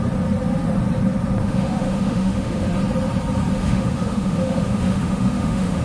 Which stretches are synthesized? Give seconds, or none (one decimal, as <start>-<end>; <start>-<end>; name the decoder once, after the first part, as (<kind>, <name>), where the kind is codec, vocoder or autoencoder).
1.4-2.7 (autoencoder, DAC-VAE); 3.6-5.8